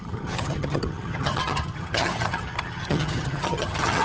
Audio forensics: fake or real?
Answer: fake